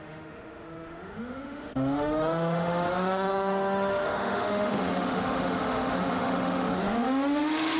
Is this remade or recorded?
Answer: remade